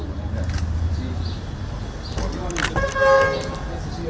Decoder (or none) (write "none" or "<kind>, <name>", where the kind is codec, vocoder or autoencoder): none